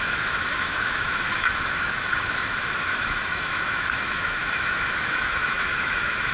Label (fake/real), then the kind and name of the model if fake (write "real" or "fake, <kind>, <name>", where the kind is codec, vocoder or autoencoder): fake, autoencoder, DAC-VAE